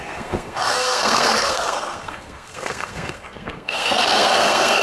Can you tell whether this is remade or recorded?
remade